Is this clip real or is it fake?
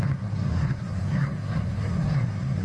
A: fake